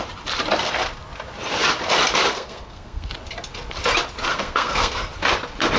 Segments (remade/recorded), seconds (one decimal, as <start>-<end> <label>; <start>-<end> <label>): 0.0-2.3 recorded; 2.3-3.1 remade; 3.1-4.3 recorded; 4.3-5.1 remade; 5.1-5.8 recorded